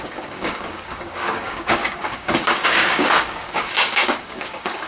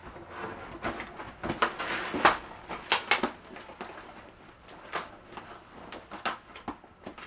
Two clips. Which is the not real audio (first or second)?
first